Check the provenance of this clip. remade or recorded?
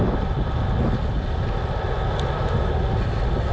recorded